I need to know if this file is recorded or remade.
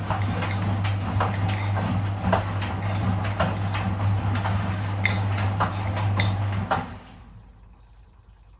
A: recorded